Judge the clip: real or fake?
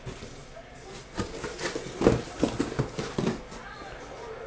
real